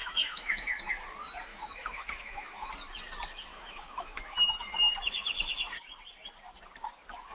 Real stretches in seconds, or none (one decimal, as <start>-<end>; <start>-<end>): 0.8-1.5; 2.7-3.5; 4.7-7.3